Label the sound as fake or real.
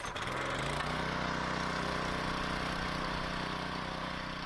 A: real